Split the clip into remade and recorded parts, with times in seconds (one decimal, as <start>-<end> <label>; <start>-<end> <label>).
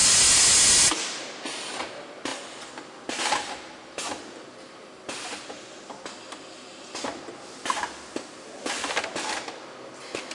0.0-10.3 recorded